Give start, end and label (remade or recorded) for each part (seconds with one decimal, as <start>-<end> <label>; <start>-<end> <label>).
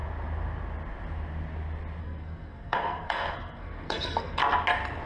0.0-2.0 recorded; 2.0-4.4 remade; 4.4-5.1 recorded